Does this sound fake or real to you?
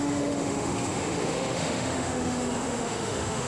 fake